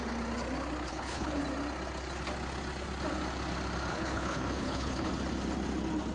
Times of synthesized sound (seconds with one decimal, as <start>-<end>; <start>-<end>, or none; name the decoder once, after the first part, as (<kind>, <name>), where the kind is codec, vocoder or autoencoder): 0.9-1.4 (codec, HILCodec); 3.9-5.1